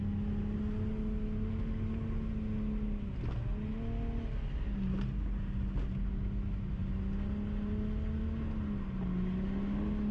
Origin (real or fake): real